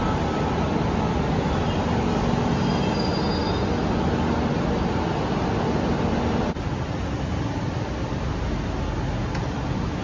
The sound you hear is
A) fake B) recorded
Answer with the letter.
B